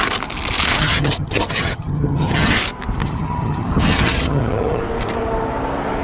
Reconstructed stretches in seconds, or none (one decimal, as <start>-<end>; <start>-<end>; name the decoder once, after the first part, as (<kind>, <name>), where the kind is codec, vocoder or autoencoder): 0.7-2.5 (vocoder, HiFi-GAN); 3.0-4.8